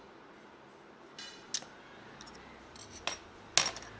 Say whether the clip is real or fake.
real